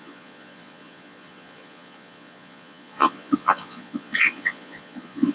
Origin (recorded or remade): remade